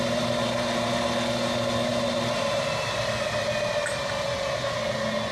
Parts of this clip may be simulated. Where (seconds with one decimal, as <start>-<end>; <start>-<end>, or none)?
none